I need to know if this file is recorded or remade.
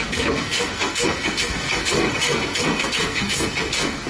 remade